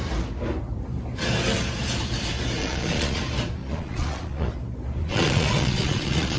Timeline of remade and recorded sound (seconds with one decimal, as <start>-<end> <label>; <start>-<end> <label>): 0.0-2.6 recorded; 2.6-3.2 remade; 3.2-3.6 recorded; 3.6-4.5 remade; 4.5-5.0 recorded; 5.0-6.4 remade